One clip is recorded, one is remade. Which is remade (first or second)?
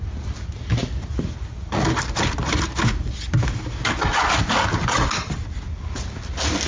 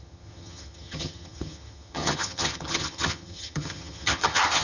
second